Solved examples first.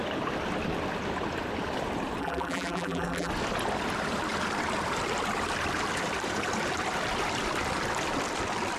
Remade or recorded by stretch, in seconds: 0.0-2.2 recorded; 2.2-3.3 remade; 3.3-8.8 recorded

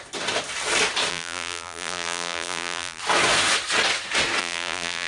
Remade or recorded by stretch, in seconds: 0.0-1.1 recorded; 1.1-3.0 remade; 3.0-4.4 recorded; 4.4-5.1 remade

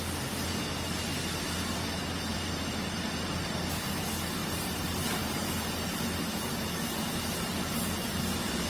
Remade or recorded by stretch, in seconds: 0.0-4.4 recorded; 4.4-6.0 remade; 6.0-8.7 recorded

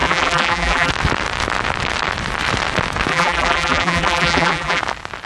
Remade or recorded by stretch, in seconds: 0.0-0.9 remade; 0.9-3.1 recorded; 3.1-4.8 remade; 4.8-5.3 recorded

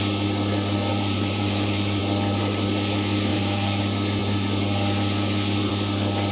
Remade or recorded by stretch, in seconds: 0.0-0.9 recorded; 0.9-2.0 remade; 2.0-3.3 recorded; 3.3-3.8 remade; 3.8-6.3 recorded

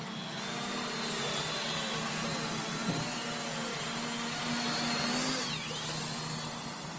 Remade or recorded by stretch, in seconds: 0.0-7.0 recorded

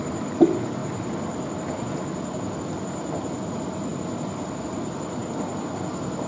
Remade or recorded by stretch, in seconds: 0.0-0.8 remade; 0.8-2.6 recorded; 2.6-3.9 remade; 3.9-4.7 recorded; 4.7-6.3 remade